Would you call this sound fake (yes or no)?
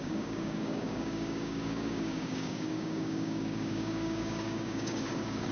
yes